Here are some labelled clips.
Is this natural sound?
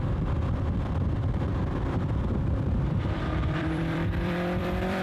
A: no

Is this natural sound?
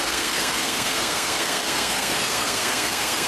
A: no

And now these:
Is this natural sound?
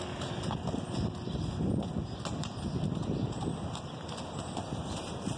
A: yes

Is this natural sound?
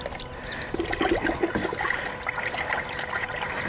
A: yes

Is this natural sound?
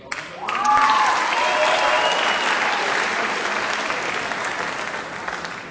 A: yes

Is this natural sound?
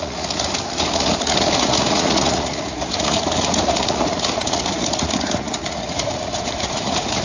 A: no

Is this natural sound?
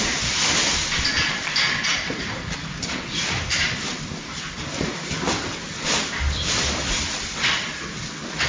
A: no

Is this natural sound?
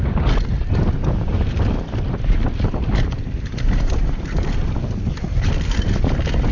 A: yes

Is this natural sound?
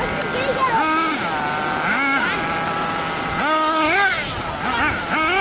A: yes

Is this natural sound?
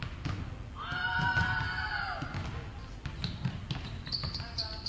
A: yes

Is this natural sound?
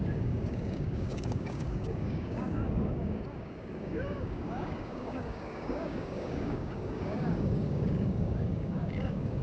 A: no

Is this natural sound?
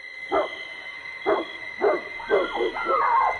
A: yes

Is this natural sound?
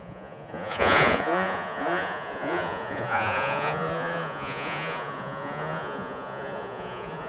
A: no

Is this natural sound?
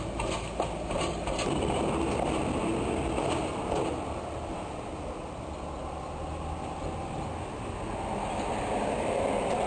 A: yes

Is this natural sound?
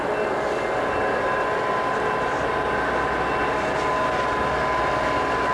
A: yes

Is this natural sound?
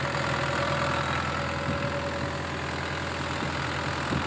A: yes